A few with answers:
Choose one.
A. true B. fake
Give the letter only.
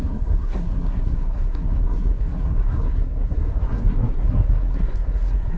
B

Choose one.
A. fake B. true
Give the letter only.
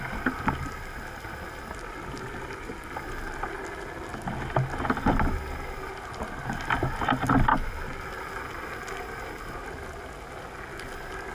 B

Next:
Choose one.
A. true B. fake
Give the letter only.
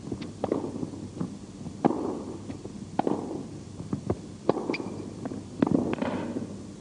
A